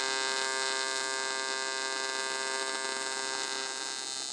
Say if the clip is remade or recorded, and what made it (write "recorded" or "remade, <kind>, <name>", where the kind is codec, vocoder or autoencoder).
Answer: recorded